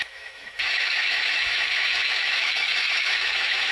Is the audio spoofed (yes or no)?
yes